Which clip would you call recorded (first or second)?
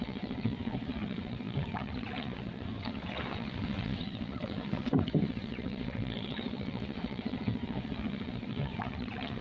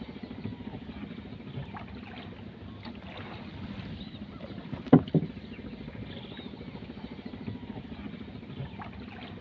second